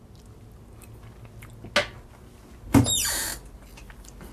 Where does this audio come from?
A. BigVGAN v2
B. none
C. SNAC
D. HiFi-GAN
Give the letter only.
B